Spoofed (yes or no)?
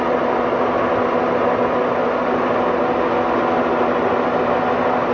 no